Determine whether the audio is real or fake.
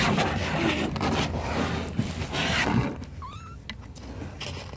real